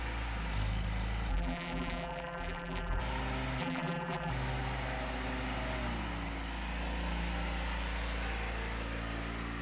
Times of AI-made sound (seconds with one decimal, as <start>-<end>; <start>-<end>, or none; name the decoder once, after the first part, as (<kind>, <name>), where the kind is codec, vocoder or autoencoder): 1.3-3.0 (vocoder, BigVGAN v2); 3.6-4.3